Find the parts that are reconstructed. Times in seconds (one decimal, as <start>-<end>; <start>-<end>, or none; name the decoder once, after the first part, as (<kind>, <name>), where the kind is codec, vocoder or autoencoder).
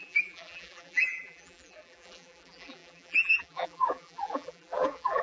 0.0-5.2 (vocoder, BigVGAN v2)